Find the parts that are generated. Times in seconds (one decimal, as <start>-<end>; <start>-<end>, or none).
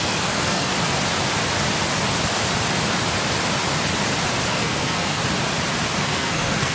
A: 0.0-0.7; 4.5-5.2; 6.0-6.7